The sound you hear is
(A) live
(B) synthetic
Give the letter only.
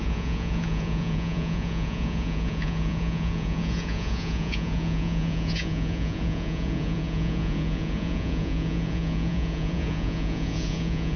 B